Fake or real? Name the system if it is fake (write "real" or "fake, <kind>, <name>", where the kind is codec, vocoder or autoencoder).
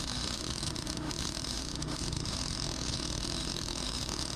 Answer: fake, autoencoder, DAC-VAE